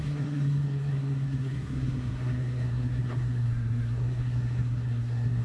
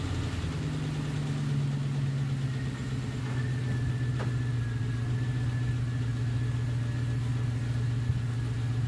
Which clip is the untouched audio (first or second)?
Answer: second